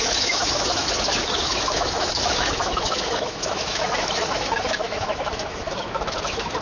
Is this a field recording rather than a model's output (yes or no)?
no